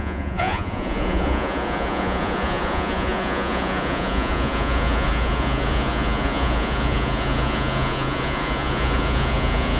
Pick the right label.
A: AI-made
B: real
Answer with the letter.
A